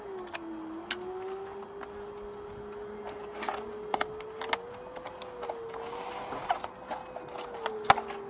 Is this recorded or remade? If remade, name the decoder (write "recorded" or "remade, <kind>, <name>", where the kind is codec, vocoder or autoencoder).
recorded